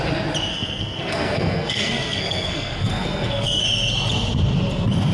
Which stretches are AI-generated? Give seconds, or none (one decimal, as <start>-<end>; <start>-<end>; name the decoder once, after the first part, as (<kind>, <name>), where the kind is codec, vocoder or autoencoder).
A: 0.5-3.6 (codec, SNAC)

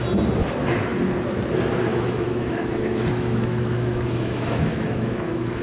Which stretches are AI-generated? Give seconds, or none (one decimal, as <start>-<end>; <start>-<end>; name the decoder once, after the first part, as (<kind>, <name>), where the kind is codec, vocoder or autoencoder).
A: 1.9-5.6 (autoencoder, DAC-VAE)

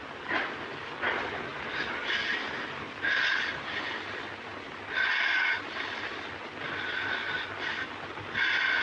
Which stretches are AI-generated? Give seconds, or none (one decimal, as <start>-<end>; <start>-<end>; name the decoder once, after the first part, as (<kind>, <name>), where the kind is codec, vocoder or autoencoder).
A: none

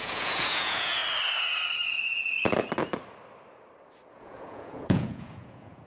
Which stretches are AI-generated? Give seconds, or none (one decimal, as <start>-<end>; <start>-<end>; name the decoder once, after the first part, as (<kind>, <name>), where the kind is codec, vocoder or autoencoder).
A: 0.0-1.0 (vocoder, Vocos); 4.1-5.9

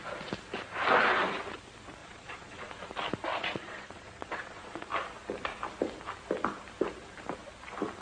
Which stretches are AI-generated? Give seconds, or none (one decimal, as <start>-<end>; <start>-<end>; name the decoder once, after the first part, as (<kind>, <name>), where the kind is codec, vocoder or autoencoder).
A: 2.0-2.7 (vocoder, Vocos); 3.3-4.9

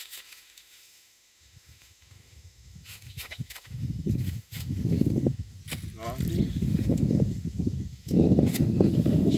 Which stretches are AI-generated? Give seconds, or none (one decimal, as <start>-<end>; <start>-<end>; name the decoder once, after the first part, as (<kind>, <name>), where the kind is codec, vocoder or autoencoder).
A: 0.0-5.6 (autoencoder, DAC-VAE); 6.4-9.4